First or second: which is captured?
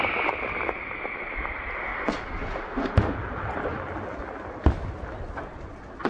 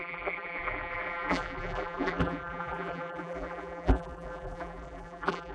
first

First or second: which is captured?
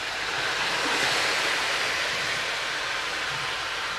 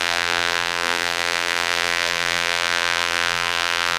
first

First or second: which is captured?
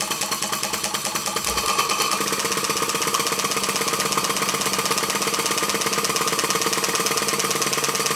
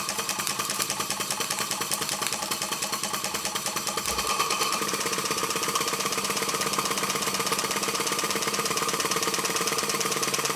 first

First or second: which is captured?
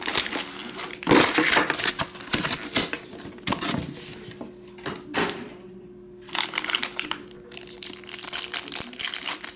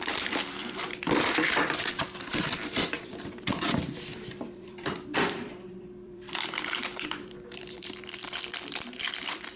first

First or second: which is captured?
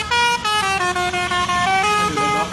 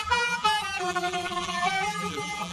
first